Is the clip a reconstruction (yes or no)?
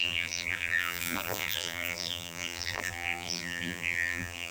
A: yes